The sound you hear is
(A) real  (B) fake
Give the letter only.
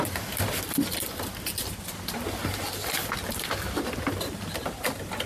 A